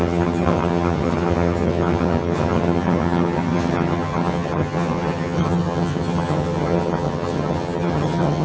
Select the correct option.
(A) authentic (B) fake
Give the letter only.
B